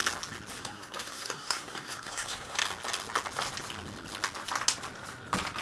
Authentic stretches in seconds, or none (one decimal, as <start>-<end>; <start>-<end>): 0.0-0.6; 2.6-5.6